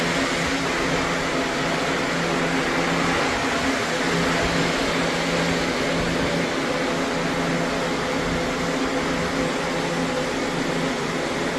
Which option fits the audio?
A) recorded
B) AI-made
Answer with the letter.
A